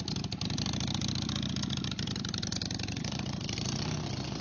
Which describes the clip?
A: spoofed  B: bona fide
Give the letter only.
B